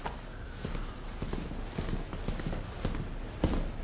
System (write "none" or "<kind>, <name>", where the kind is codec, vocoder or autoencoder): none